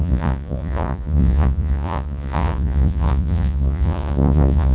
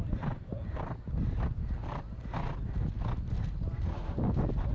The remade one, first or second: first